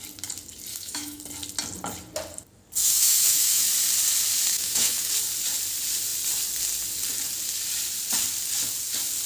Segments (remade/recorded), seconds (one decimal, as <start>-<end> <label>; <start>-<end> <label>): 0.0-0.7 recorded; 0.7-1.2 remade; 1.2-2.8 recorded; 2.8-3.6 remade; 3.6-4.5 recorded; 4.5-5.1 remade; 5.1-9.3 recorded